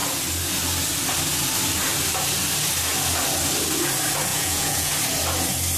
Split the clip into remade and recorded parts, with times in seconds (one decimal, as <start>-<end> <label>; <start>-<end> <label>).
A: 0.0-4.3 recorded; 4.3-4.9 remade; 4.9-5.8 recorded